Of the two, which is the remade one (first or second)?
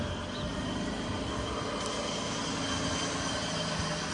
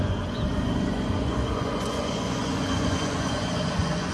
second